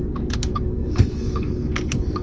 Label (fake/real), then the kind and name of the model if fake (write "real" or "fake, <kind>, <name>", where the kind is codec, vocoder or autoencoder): fake, codec, SNAC